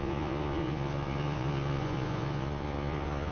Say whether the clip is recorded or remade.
remade